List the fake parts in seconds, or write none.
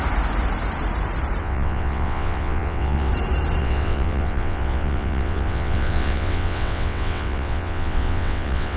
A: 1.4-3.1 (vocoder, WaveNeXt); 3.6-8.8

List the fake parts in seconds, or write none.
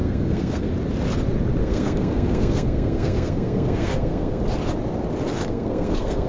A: 0.0-0.7 (codec, SNAC); 1.6-4.4; 5.5-6.3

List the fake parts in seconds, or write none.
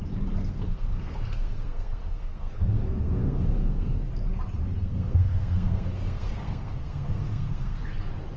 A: 0.4-4.1 (codec, SNAC); 4.8-7.8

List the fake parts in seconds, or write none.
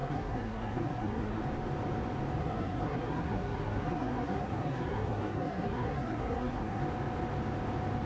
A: 0.0-1.4 (codec, SNAC); 2.4-6.8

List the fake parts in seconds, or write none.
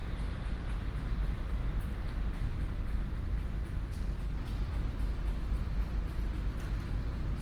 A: 1.6-3.2 (vocoder, BigVGAN v2)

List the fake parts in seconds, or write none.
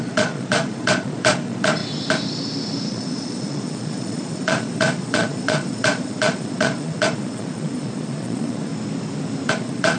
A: 0.0-1.8 (vocoder, Vocos); 2.9-8.7; 9.5-10.0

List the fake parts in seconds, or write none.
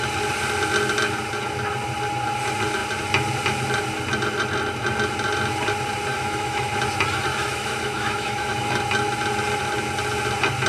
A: 6.1-6.7 (autoencoder, DAC-VAE); 7.3-8.8